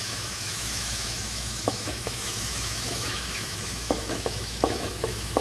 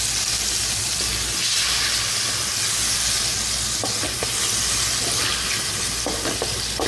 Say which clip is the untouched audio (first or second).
second